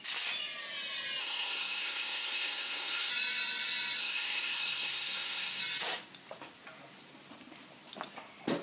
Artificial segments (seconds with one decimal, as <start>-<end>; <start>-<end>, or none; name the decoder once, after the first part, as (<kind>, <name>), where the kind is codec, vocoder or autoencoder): 1.2-3.1 (codec, SNAC); 4.0-5.6